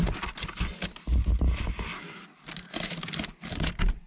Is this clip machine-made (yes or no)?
no